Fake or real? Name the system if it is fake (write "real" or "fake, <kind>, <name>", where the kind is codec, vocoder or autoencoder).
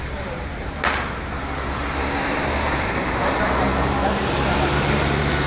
fake, vocoder, BigVGAN v2